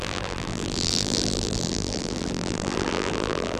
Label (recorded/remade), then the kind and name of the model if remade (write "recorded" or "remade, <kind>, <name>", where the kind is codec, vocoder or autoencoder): remade, vocoder, BigVGAN v2